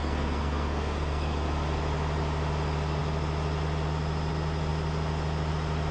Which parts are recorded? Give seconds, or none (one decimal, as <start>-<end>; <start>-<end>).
1.3-5.9